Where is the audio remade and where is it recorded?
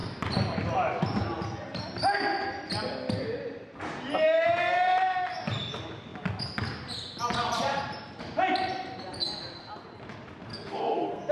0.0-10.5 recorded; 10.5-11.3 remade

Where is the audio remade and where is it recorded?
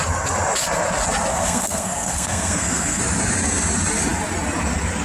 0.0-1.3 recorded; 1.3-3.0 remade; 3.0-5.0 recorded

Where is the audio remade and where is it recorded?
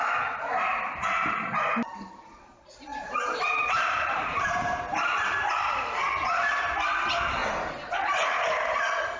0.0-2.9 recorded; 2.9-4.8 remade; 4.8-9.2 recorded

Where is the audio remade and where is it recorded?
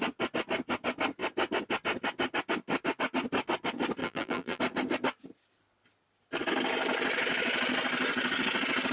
0.0-4.0 recorded; 4.0-4.6 remade; 4.6-8.9 recorded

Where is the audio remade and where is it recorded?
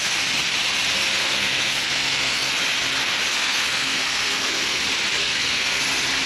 0.0-1.2 recorded; 1.2-2.5 remade; 2.5-3.3 recorded; 3.3-4.8 remade; 4.8-5.2 recorded; 5.2-5.8 remade; 5.8-6.3 recorded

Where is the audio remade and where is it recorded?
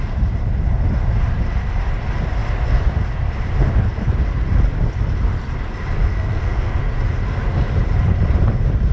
0.0-6.1 recorded; 6.1-6.7 remade; 6.7-8.9 recorded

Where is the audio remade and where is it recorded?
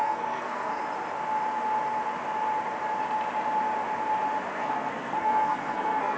0.0-0.8 remade; 0.8-4.5 recorded; 4.5-6.2 remade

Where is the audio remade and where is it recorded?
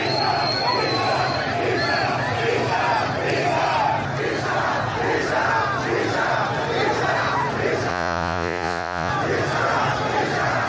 0.0-7.9 recorded; 7.9-9.1 remade; 9.1-10.7 recorded